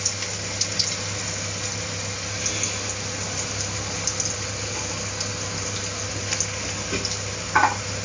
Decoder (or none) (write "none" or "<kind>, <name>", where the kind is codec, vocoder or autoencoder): none